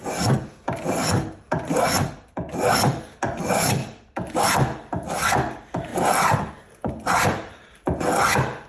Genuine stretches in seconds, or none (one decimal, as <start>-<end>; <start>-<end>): 0.0-8.7